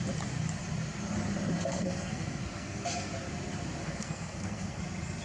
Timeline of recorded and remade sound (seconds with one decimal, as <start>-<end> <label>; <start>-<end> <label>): 0.0-1.7 recorded; 1.7-3.1 remade; 3.1-3.8 recorded; 3.8-4.8 remade; 4.8-5.2 recorded